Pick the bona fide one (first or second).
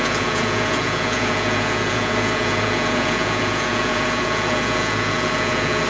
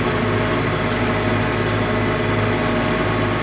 second